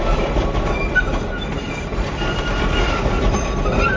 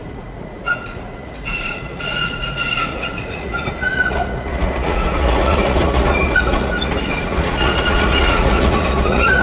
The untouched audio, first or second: first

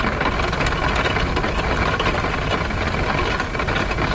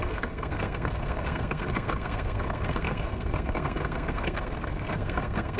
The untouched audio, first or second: first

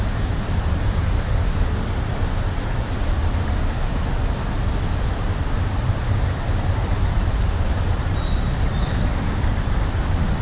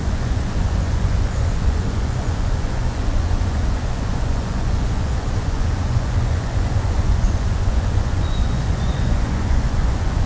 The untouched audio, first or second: first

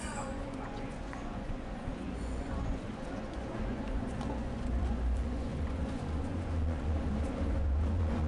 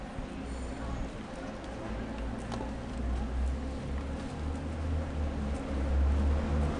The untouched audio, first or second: second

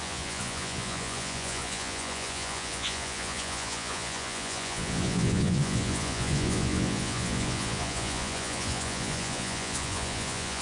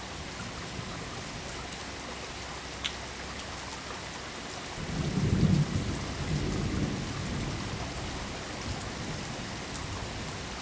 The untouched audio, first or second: second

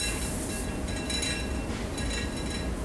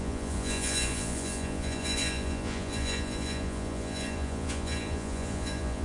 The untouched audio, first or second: first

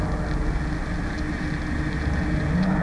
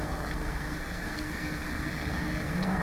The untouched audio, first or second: first